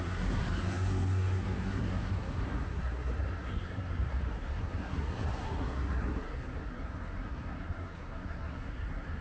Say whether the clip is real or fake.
fake